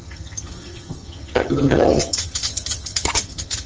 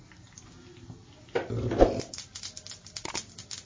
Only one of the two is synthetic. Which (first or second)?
first